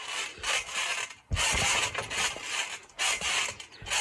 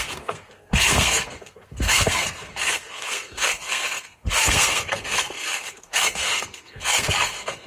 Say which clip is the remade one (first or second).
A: second